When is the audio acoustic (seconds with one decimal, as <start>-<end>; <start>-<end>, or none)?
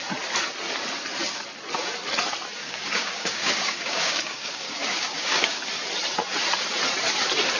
0.0-2.6; 5.6-7.6